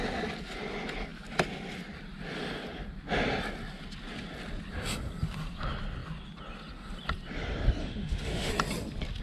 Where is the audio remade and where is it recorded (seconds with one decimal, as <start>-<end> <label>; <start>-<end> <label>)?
0.0-7.8 recorded; 7.8-8.5 remade; 8.5-9.2 recorded